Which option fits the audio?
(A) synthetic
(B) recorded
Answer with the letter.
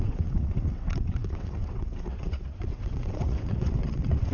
A